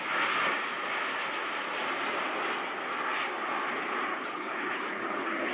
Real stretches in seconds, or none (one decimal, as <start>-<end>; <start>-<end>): 0.0-4.1